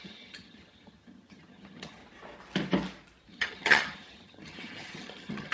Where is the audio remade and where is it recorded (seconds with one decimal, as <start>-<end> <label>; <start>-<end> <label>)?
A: 0.0-2.0 remade; 2.0-3.3 recorded; 3.3-5.5 remade